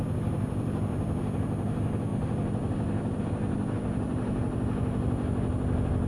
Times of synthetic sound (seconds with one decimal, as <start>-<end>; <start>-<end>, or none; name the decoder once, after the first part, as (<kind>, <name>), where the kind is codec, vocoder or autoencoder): none